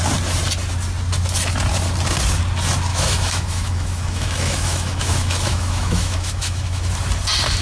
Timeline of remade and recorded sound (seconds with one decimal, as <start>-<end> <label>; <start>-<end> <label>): 0.0-2.9 recorded; 2.9-6.9 remade; 6.9-7.6 recorded